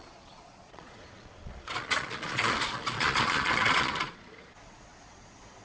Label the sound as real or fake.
fake